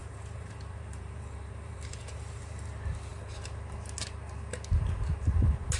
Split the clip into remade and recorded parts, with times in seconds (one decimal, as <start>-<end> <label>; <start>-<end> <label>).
0.0-2.7 remade; 2.7-5.8 recorded